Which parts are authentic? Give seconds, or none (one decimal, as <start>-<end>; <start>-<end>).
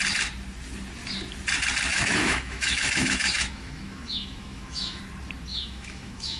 0.0-1.9; 5.0-5.5